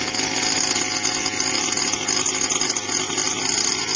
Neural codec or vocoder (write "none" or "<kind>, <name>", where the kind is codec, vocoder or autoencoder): none